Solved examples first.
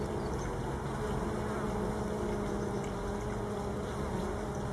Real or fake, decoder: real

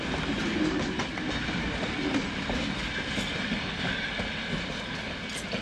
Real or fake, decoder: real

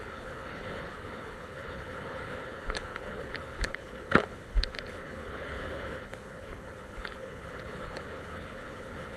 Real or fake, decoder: fake, codec, HILCodec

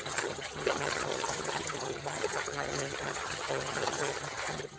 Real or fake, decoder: fake, vocoder, HiFi-GAN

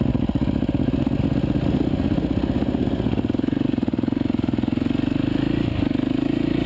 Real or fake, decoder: real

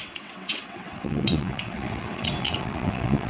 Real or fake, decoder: fake, vocoder, WaveNeXt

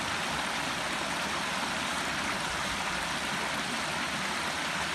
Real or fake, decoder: real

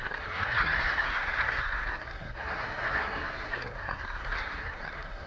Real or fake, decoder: fake, codec, SNAC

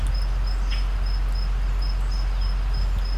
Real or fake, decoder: real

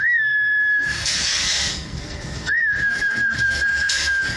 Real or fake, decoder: fake, codec, SNAC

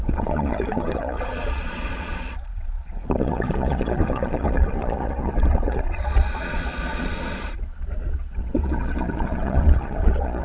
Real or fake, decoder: fake, vocoder, Vocos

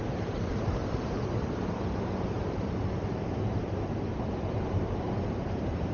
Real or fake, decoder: fake, vocoder, BigVGAN v2